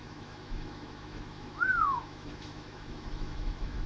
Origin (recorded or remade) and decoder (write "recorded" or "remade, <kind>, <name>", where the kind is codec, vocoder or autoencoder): remade, autoencoder, DAC-VAE